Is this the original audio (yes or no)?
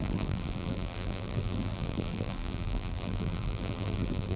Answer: no